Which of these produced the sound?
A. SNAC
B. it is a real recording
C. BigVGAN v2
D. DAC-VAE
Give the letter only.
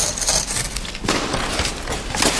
B